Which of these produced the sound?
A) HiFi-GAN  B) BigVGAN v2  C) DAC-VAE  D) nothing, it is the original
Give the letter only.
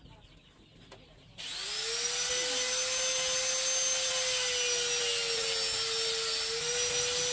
D